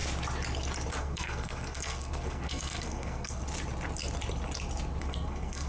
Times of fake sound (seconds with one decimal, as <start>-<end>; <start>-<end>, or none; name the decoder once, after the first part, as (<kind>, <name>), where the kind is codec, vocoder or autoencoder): 1.0-3.4 (codec, SNAC); 5.0-5.7